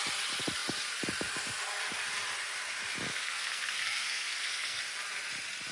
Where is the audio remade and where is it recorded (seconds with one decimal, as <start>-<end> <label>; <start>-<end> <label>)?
0.0-3.1 recorded; 3.1-4.8 remade; 4.8-5.7 recorded